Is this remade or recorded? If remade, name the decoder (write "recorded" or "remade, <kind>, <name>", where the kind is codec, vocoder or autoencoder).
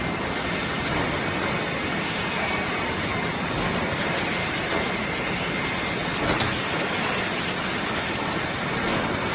recorded